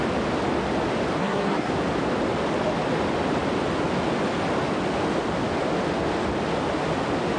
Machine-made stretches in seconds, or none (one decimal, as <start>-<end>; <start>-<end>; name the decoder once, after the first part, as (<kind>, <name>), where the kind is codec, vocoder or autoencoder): 1.2-1.7 (codec, SNAC)